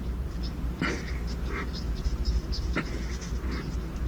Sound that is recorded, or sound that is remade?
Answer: remade